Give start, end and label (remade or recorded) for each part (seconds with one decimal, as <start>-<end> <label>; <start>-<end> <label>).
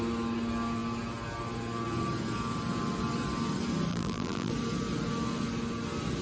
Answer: 0.0-3.9 recorded; 3.9-4.5 remade; 4.5-6.2 recorded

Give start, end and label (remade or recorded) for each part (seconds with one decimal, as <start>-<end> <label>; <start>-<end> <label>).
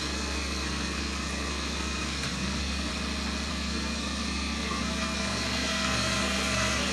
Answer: 0.0-2.9 remade; 2.9-3.5 recorded; 3.5-6.9 remade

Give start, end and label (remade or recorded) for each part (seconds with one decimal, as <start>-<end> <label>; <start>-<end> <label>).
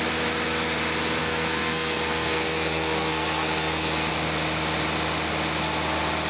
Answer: 0.0-1.2 recorded; 1.2-4.1 remade; 4.1-6.3 recorded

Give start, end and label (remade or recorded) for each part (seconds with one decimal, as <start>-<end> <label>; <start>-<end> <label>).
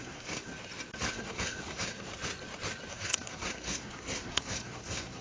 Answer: 0.0-0.5 remade; 0.5-1.1 recorded; 1.1-2.1 remade; 2.1-2.9 recorded; 2.9-5.2 remade